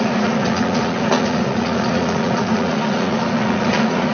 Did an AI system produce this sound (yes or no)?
yes